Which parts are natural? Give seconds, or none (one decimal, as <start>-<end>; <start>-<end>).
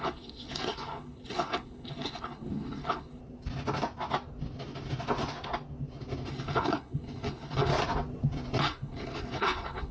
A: 3.2-6.3; 7.7-8.6